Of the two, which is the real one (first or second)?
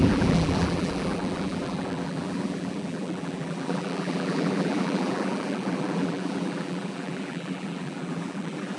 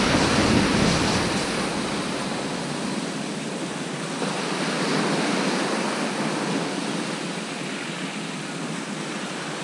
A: second